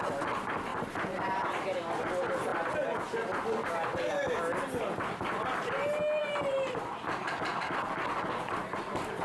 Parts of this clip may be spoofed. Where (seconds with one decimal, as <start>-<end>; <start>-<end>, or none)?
none